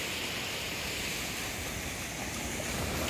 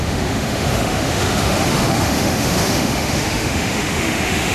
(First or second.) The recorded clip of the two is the first